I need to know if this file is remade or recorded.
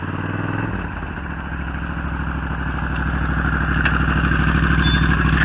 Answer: recorded